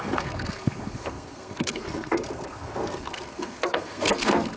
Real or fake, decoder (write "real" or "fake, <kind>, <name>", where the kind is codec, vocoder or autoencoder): fake, codec, SNAC